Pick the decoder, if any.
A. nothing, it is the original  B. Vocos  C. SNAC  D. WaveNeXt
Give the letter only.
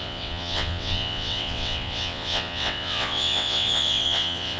D